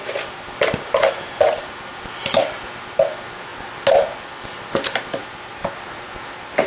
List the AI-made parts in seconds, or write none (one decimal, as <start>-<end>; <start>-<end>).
1.9-2.6; 5.6-6.3